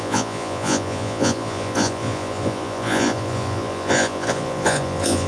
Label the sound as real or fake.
fake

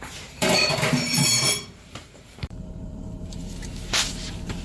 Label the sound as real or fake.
fake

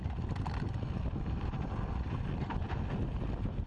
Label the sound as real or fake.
real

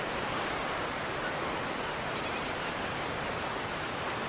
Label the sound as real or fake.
real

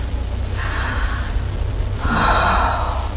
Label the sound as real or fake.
real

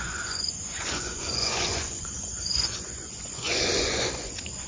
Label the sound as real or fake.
fake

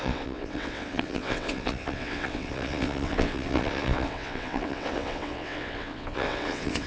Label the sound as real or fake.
fake